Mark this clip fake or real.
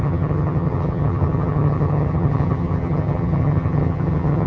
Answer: fake